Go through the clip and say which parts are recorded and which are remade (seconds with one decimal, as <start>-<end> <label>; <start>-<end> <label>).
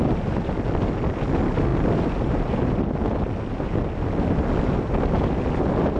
0.0-6.0 recorded